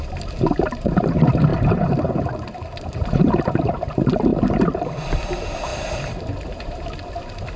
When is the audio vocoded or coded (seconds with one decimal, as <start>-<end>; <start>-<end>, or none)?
0.0-4.3; 5.2-7.6